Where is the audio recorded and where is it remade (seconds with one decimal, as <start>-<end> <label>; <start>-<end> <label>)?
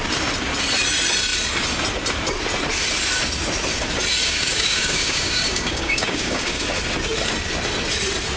0.0-4.2 recorded; 4.2-6.7 remade; 6.7-8.4 recorded